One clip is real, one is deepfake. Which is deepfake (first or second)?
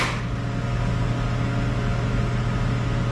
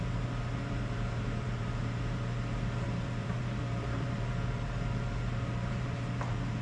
second